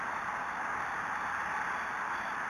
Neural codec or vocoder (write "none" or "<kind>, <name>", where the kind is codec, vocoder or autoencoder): none